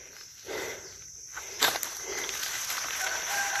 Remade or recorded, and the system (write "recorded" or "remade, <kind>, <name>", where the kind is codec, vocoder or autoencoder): remade, vocoder, BigVGAN v2